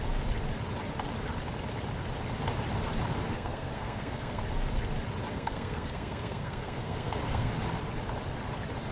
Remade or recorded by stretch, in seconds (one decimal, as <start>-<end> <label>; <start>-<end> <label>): 0.0-3.3 recorded; 3.3-4.4 remade; 4.4-5.3 recorded; 5.3-7.5 remade; 7.5-8.9 recorded